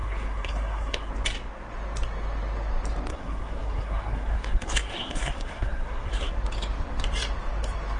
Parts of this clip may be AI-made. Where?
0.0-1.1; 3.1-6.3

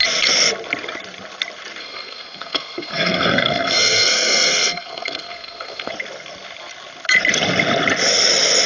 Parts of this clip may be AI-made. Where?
1.8-5.9

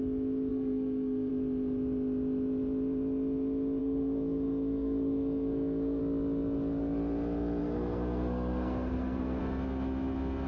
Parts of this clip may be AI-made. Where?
0.5-1.3; 3.8-6.0; 7.6-9.4

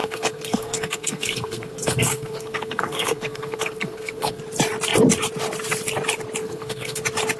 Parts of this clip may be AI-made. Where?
0.0-4.4; 6.4-7.0

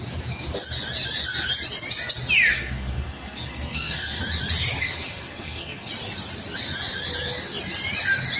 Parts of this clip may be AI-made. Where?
2.5-4.2; 4.8-5.9

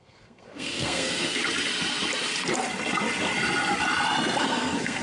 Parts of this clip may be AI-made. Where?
0.0-1.4; 4.4-5.0